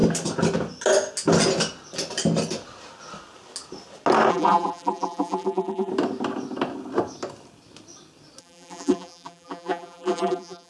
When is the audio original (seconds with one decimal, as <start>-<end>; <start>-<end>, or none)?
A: 0.0-4.3; 5.9-8.4